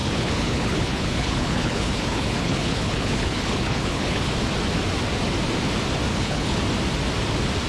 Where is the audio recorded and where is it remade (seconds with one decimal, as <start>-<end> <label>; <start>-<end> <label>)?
0.0-4.3 remade; 4.3-6.1 recorded; 6.1-6.6 remade; 6.6-7.7 recorded